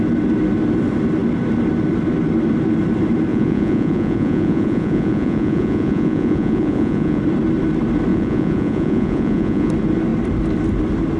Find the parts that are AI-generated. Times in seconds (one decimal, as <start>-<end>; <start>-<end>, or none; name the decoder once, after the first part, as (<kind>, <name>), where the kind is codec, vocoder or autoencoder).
3.3-7.2 (vocoder, Vocos); 8.1-9.7